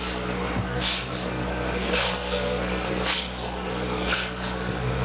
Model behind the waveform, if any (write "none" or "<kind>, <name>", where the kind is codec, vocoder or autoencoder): codec, SNAC